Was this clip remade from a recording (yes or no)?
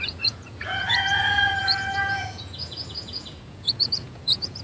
yes